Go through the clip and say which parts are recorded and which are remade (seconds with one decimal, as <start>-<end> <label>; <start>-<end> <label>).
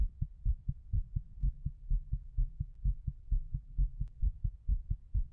0.0-1.4 recorded; 1.4-4.2 remade; 4.2-5.3 recorded